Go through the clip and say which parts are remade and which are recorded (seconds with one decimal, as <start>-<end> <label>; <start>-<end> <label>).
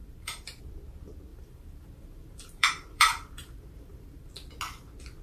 0.0-0.6 remade; 0.6-1.3 recorded; 1.3-4.3 remade; 4.3-5.2 recorded